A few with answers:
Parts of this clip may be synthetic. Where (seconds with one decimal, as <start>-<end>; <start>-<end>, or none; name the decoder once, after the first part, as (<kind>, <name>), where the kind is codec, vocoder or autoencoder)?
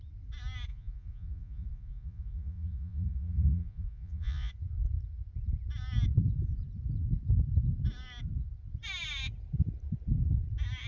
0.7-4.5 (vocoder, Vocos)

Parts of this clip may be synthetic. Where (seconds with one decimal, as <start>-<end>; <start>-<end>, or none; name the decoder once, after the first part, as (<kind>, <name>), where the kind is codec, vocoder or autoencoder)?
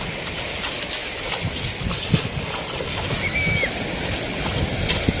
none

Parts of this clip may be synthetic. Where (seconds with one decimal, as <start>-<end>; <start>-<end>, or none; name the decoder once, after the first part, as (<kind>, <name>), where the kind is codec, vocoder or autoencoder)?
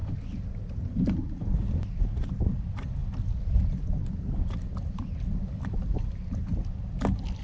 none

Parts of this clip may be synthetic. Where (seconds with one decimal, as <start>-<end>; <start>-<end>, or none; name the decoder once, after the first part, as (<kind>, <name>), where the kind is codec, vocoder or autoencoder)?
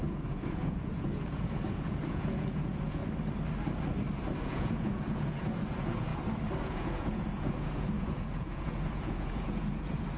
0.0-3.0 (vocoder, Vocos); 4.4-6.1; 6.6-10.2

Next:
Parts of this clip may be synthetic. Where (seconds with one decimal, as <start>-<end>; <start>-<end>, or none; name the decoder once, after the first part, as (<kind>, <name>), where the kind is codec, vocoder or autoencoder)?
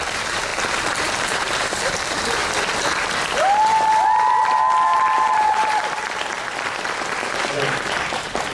0.0-0.5 (vocoder, BigVGAN v2); 1.2-2.4; 7.1-8.5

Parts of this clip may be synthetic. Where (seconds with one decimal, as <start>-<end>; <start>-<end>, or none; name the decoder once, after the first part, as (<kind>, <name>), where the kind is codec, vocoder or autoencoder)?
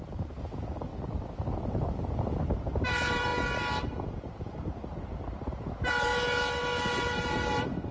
0.0-0.9 (vocoder, BigVGAN v2); 1.6-3.3; 4.1-6.1; 6.8-7.9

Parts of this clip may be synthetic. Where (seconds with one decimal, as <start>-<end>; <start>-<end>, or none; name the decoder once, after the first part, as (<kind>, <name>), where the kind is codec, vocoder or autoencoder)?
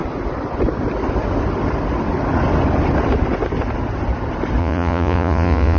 4.6-5.8 (vocoder, Vocos)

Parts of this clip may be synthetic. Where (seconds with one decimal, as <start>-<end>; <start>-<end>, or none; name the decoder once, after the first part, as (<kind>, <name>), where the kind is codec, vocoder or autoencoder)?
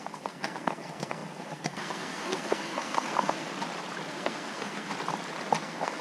0.0-3.5 (codec, SNAC); 4.1-4.9; 5.6-6.0